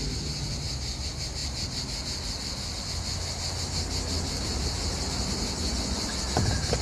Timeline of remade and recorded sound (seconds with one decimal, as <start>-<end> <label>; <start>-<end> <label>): 0.0-5.6 recorded; 5.6-6.1 remade; 6.1-6.8 recorded